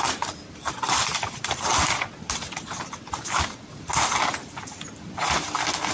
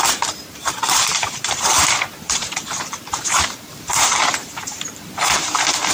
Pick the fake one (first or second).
second